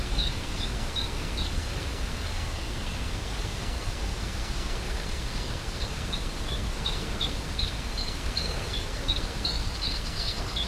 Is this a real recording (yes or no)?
no